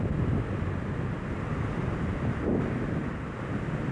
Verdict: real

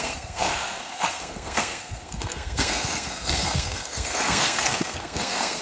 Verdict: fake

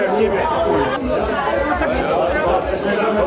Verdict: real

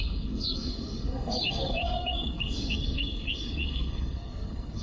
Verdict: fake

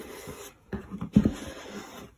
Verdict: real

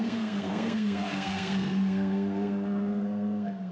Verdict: fake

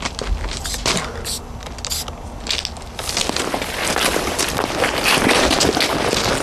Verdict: real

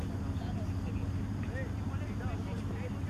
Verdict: real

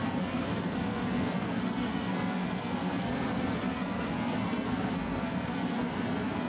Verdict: fake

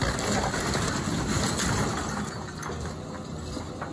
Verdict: real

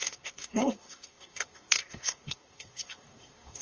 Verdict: fake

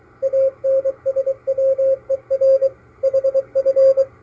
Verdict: real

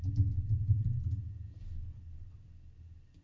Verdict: real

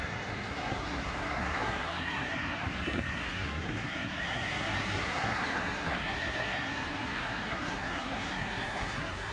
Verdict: fake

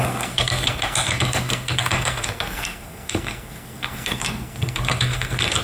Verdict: fake